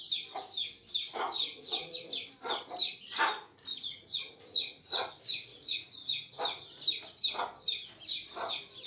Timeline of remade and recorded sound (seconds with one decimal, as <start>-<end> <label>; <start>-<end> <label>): 0.0-1.1 recorded; 1.1-1.9 remade; 1.9-3.7 recorded; 3.7-5.1 remade; 5.1-5.5 recorded; 5.5-6.4 remade; 6.4-8.9 recorded